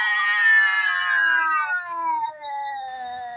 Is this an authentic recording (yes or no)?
yes